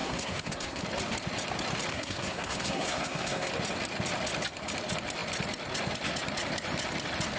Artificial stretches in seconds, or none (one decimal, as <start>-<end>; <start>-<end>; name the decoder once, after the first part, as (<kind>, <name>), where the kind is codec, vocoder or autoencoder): 0.0-0.8 (codec, SNAC); 1.9-3.5